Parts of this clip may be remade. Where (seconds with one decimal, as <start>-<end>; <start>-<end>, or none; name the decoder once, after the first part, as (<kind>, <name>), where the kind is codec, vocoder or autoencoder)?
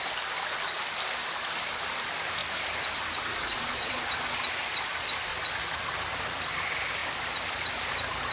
3.3-4.0 (vocoder, Vocos)